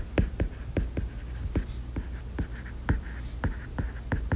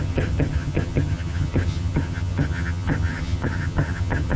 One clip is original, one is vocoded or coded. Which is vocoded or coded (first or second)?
second